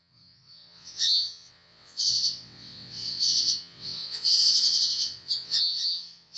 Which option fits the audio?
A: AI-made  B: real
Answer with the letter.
A